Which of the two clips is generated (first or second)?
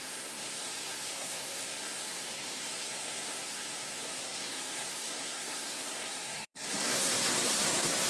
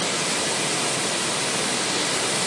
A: first